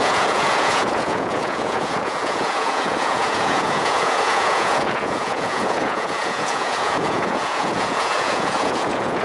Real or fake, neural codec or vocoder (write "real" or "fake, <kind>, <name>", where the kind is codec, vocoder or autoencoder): fake, vocoder, Vocos